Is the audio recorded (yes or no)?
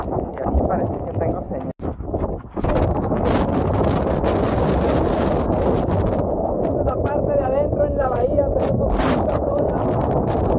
yes